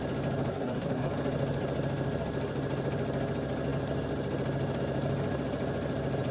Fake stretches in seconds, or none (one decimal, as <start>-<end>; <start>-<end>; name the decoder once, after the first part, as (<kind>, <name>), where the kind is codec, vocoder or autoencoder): 0.5-1.1 (codec, SNAC)